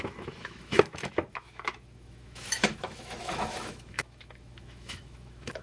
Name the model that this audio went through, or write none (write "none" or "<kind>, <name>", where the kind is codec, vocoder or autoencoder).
autoencoder, DAC-VAE